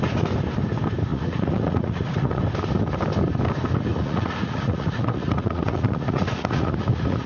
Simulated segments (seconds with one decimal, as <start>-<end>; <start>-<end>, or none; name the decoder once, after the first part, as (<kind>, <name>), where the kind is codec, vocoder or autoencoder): 1.1-2.4 (vocoder, Vocos); 3.9-7.3

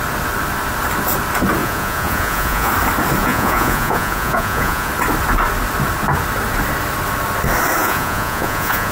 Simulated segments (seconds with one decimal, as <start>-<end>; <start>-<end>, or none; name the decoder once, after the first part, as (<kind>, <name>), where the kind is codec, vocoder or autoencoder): 1.6-2.7 (vocoder, Vocos); 3.2-4.9; 7.8-8.9

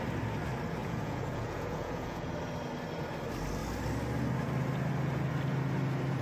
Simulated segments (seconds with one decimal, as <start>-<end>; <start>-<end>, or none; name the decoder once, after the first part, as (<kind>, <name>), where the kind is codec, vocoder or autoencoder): 0.8-2.3 (vocoder, Vocos)

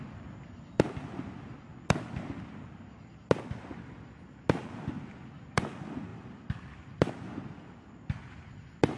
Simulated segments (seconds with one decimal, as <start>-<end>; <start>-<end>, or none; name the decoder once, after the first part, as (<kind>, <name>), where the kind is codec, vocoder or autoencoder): none

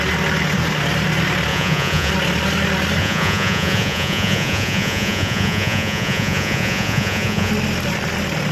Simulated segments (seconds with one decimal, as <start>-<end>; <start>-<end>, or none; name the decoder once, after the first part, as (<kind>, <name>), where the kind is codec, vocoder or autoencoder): 1.5-2.1 (vocoder, Vocos); 3.0-7.5